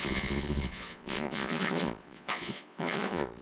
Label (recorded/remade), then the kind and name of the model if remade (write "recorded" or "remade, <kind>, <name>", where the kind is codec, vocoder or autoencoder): remade, vocoder, Vocos